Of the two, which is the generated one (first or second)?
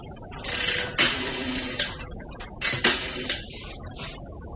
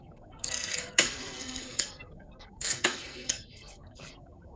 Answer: second